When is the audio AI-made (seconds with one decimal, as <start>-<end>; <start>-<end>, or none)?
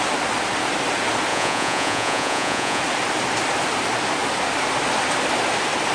1.3-2.8